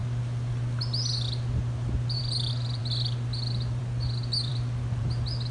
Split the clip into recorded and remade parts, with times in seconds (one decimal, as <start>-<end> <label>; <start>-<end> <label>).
0.0-5.5 recorded